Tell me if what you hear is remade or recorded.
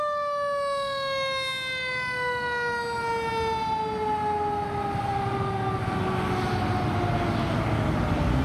recorded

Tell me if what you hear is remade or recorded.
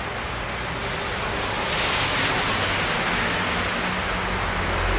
recorded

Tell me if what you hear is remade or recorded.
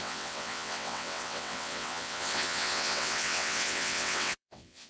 remade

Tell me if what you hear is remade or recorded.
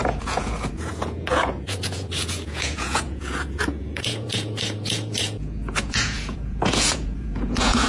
remade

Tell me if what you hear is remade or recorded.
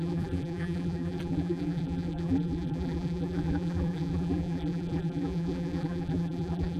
remade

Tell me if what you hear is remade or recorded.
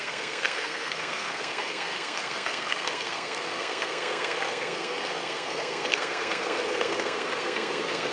remade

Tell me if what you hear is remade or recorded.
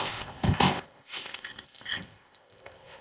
remade